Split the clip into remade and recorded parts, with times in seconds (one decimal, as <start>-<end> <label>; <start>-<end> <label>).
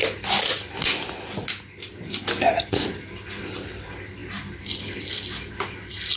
0.0-6.2 recorded